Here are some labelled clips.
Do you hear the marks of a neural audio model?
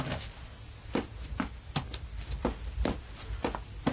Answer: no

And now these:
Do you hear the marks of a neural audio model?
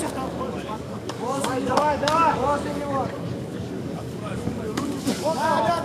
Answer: yes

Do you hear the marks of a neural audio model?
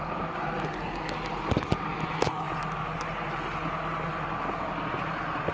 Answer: no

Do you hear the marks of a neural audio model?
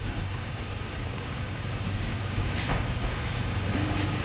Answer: yes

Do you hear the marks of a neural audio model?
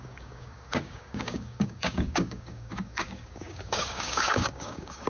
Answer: yes